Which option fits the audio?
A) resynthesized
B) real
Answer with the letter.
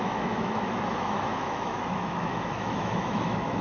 A